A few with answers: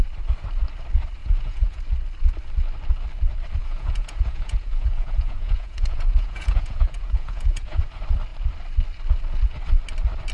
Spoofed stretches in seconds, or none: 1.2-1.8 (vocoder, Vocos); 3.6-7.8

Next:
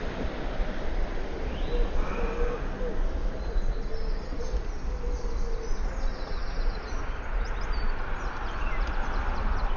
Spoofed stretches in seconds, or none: 6.1-7.0 (vocoder, Vocos)